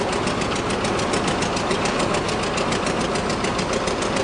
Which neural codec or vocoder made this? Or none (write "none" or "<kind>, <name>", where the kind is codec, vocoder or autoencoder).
none